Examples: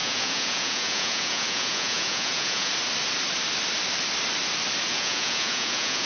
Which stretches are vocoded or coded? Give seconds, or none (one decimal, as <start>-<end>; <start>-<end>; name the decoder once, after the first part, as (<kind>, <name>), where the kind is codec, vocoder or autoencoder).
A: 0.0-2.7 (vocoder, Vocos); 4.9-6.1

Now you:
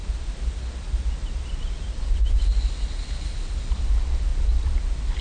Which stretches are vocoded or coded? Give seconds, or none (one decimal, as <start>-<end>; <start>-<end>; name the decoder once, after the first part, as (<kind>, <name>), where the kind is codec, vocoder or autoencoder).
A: none

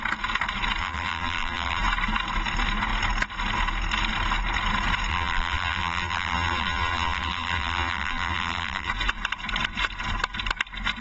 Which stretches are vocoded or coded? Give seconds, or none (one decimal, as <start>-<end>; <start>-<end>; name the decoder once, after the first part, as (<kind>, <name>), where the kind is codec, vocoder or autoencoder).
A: 0.8-1.8 (vocoder, BigVGAN v2); 5.1-8.9

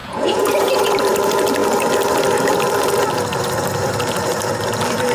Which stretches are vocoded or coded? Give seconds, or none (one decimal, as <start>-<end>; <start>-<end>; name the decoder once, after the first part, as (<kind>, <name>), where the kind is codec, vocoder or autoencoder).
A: 0.0-0.9 (vocoder, Vocos)

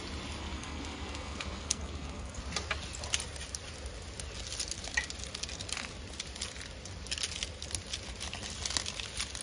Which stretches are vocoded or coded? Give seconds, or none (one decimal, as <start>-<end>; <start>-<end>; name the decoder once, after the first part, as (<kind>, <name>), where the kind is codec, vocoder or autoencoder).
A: 0.4-2.4 (codec, SNAC)